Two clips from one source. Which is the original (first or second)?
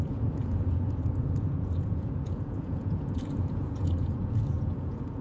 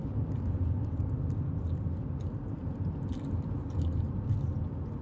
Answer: second